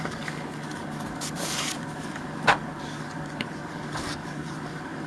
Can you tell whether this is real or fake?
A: fake